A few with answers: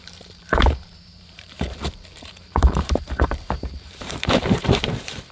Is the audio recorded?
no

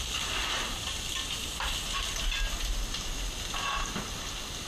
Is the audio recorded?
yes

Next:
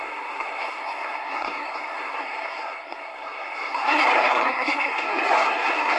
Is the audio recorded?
no